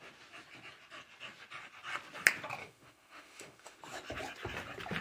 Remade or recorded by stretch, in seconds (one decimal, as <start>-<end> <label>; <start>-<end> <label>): 0.0-2.6 recorded; 2.6-3.8 remade; 3.8-5.0 recorded